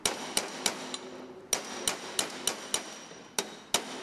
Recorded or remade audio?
recorded